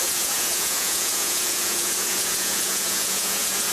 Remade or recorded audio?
remade